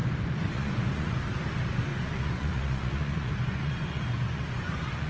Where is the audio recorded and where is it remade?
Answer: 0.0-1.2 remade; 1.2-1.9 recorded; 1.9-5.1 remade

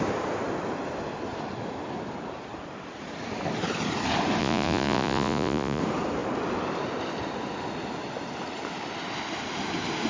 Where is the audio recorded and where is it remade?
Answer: 0.0-4.4 recorded; 4.4-5.8 remade; 5.8-10.1 recorded

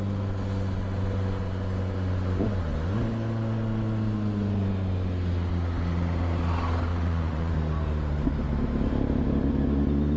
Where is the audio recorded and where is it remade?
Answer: 0.0-6.9 recorded; 6.9-7.5 remade; 7.5-10.2 recorded

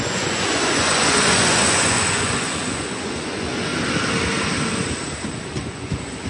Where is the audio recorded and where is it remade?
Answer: 0.0-3.7 remade; 3.7-5.3 recorded; 5.3-6.3 remade

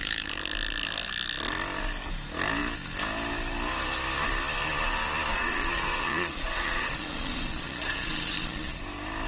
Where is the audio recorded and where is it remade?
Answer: 0.0-5.3 recorded; 5.3-8.8 remade; 8.8-9.3 recorded